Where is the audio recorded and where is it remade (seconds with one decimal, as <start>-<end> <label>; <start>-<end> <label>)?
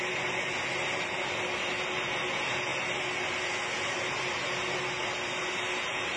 0.0-6.2 recorded